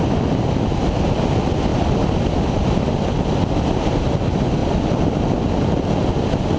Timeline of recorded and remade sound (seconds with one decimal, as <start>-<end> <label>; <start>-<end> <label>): 0.0-1.7 recorded; 1.7-3.1 remade; 3.1-4.6 recorded; 4.6-5.3 remade; 5.3-6.6 recorded

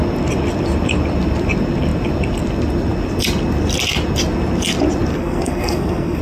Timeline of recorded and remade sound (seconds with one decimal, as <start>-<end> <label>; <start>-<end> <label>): 0.0-5.1 recorded; 5.1-6.2 remade

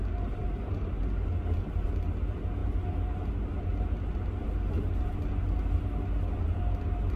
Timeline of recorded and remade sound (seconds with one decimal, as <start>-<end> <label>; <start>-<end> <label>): 0.0-0.4 recorded; 0.4-1.0 remade; 1.0-7.2 recorded

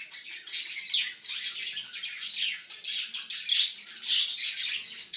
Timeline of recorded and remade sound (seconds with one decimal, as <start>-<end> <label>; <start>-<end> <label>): 0.0-5.2 recorded

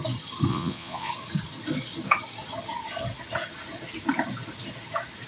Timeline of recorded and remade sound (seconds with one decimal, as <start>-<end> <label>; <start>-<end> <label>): 0.0-0.5 recorded; 0.5-1.1 remade; 1.1-5.3 recorded

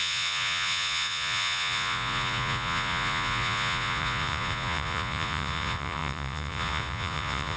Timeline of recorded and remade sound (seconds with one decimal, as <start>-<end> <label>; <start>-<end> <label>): 0.0-7.6 remade

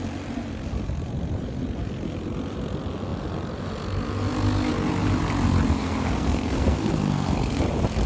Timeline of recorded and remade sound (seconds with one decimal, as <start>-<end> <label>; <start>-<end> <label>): 0.0-5.8 recorded; 5.8-7.6 remade; 7.6-8.1 recorded